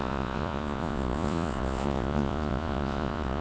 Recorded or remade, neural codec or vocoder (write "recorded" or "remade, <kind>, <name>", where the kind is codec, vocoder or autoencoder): remade, vocoder, Vocos